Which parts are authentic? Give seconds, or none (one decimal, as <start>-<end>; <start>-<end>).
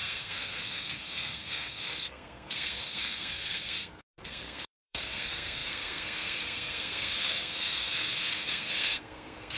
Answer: none